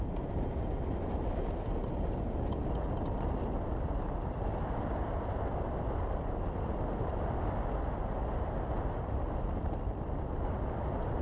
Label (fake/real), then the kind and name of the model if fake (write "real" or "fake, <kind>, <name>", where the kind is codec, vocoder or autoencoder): real